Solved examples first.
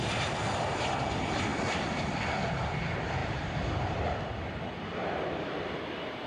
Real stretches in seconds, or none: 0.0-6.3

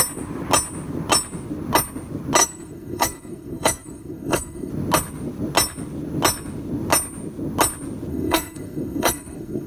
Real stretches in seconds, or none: 0.0-2.4; 4.7-8.1

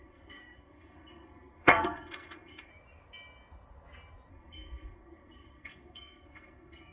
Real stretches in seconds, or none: 2.7-4.3

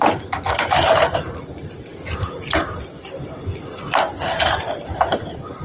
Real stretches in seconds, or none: 0.0-5.6

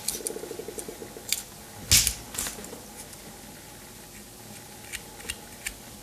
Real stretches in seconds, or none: 0.0-6.0